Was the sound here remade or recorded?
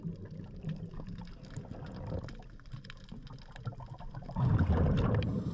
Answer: recorded